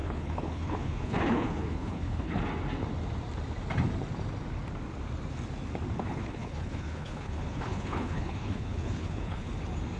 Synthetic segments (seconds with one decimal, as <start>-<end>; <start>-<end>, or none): 0.0-2.4; 6.0-9.5